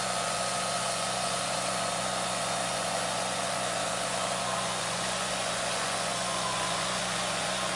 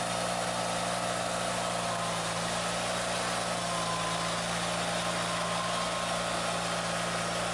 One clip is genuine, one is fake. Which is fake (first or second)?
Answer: first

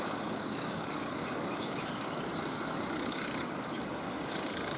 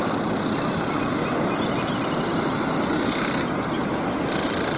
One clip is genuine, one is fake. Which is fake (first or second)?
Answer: first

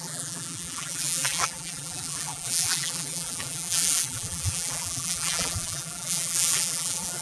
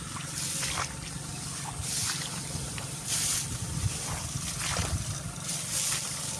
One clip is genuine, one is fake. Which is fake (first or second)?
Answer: first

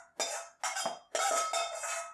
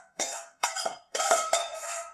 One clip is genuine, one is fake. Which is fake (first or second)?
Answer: second